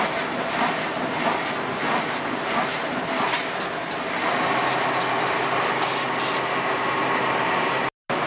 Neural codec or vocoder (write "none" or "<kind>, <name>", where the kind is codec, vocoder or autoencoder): none